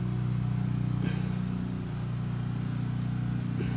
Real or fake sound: real